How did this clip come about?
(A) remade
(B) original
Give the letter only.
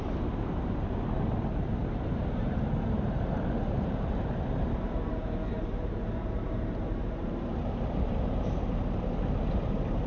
A